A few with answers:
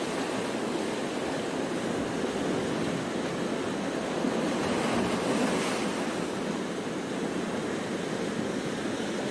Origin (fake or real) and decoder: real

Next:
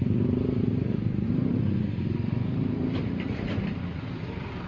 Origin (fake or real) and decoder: real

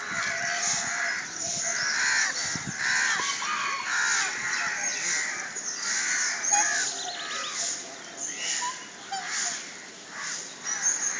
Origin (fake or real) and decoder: real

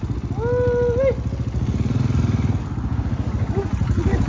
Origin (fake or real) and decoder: real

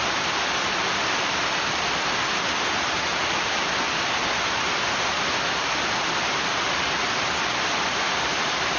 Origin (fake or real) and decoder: real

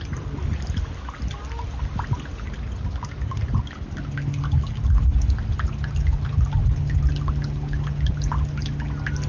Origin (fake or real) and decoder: real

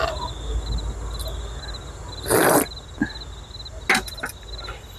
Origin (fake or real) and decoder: real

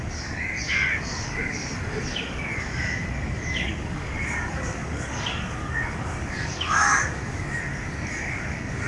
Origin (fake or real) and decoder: fake, codec, DAC